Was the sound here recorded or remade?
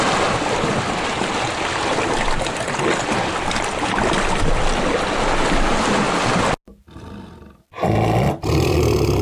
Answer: recorded